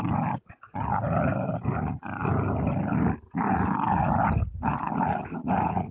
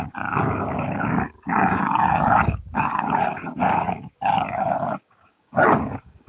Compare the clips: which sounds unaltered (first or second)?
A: first